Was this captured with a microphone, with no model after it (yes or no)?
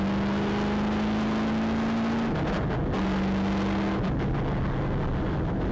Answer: yes